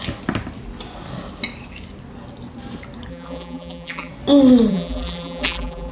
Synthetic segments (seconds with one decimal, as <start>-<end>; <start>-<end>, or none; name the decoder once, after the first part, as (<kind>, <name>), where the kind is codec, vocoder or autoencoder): 3.1-4.1 (vocoder, BigVGAN v2); 4.7-5.9